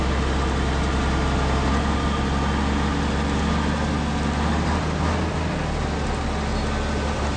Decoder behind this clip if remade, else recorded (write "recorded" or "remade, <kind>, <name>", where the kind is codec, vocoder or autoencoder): recorded